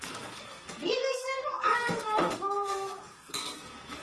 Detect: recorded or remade remade